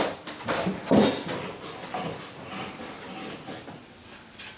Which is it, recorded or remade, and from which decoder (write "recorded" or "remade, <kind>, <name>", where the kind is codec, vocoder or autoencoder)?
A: recorded